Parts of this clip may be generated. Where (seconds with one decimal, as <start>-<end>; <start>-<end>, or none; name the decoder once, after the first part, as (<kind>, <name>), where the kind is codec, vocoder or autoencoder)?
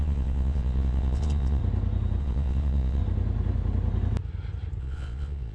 0.0-1.6 (vocoder, Vocos); 2.2-3.0; 4.8-5.5